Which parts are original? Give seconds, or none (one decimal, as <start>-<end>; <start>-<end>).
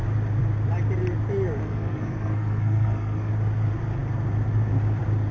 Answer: 0.0-1.6; 3.3-5.3